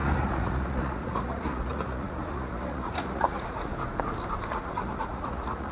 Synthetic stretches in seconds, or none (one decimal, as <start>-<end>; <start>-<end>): 0.0-3.7; 4.5-5.7